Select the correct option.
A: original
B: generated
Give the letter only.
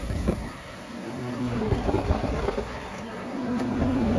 B